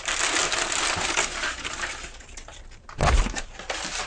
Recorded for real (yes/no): yes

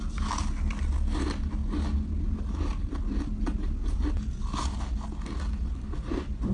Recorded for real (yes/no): yes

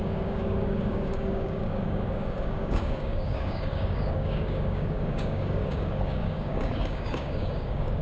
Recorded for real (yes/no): no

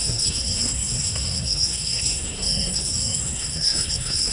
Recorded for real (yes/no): no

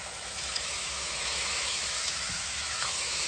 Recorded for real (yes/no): no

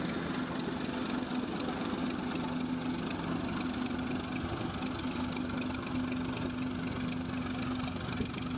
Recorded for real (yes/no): yes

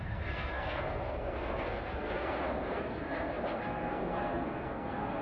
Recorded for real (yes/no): no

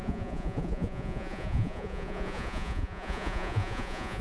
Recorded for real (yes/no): no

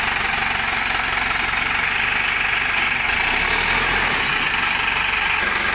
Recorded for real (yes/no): yes